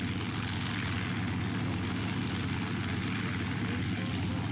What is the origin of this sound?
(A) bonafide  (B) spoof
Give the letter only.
A